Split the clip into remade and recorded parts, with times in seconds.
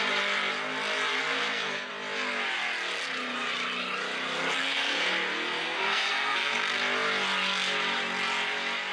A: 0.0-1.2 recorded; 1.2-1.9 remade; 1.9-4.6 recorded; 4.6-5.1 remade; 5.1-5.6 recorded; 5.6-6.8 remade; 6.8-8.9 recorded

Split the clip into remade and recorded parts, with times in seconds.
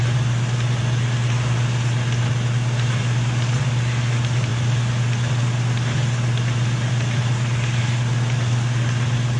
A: 0.0-9.4 recorded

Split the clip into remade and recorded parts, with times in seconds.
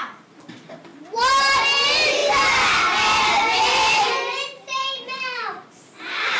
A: 0.0-2.2 recorded; 2.2-6.0 remade; 6.0-6.4 recorded